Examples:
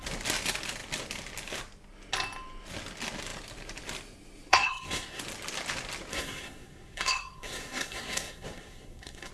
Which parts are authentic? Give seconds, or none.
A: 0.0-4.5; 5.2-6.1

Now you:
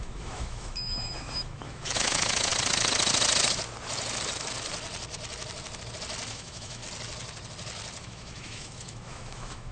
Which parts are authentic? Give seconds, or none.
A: 2.5-6.3; 6.8-8.0

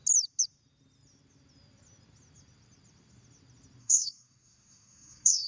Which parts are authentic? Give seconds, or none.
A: 0.0-3.8